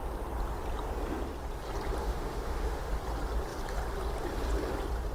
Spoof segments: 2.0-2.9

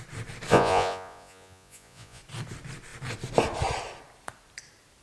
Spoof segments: 0.5-2.2

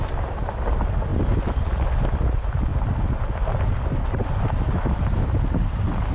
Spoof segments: none

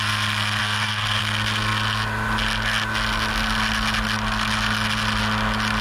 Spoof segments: 0.6-1.2

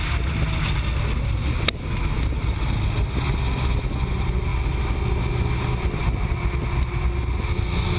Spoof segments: none

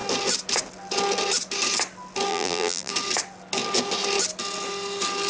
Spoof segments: 2.3-2.9

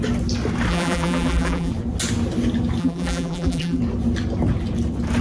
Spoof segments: 0.7-1.7; 2.8-3.8